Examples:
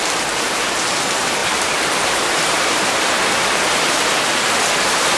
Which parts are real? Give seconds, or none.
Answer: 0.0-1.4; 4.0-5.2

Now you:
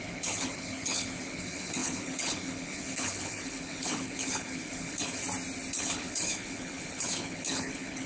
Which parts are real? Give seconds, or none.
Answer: 5.2-5.7

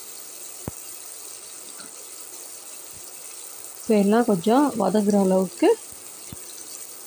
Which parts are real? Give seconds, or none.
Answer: 0.0-7.1

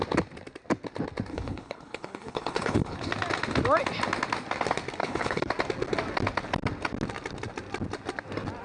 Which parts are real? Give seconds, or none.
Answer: 0.0-1.3; 3.1-5.0; 5.5-8.6

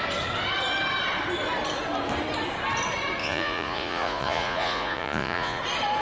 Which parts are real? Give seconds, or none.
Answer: 0.0-3.2; 5.6-6.0

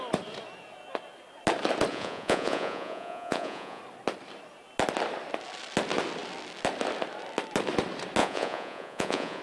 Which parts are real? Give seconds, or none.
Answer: 0.0-1.9; 3.8-8.2

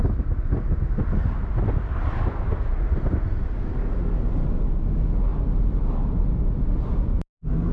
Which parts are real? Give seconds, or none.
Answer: 0.0-2.7; 3.8-5.3; 6.2-7.7

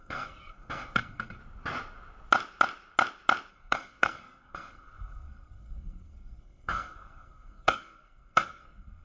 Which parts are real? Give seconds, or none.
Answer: 1.4-3.5